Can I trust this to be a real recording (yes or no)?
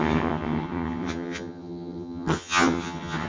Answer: no